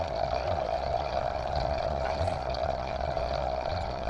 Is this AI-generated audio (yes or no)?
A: yes